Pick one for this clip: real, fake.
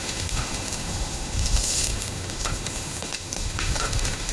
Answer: fake